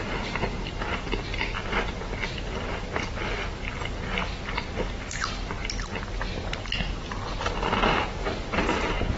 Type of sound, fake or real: real